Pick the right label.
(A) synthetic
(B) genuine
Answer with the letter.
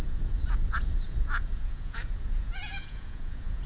A